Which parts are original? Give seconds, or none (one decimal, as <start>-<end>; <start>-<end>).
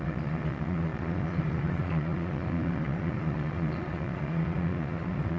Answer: none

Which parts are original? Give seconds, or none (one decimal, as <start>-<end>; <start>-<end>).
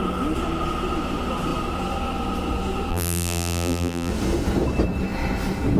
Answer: 0.0-2.9; 4.1-5.8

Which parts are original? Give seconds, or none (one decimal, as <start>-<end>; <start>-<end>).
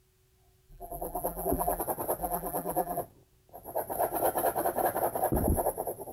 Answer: 0.0-0.7; 1.8-2.2; 3.0-6.1